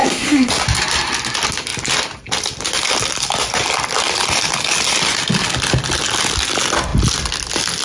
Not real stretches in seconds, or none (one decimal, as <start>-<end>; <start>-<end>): 0.0-0.5